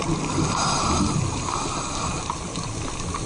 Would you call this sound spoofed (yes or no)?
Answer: no